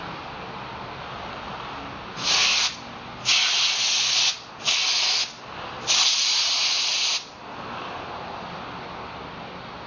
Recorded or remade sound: recorded